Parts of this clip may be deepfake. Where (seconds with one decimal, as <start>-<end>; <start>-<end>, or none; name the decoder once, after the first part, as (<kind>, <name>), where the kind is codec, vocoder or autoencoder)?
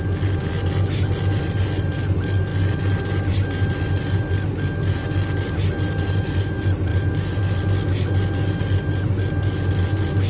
none